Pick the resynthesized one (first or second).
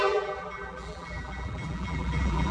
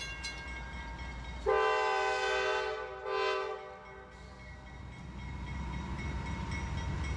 first